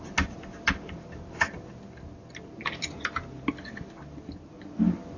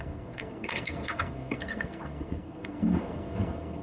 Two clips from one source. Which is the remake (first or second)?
second